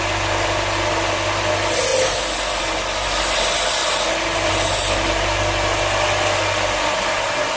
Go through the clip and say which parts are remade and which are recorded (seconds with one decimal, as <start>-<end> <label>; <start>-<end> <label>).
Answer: 0.0-7.6 recorded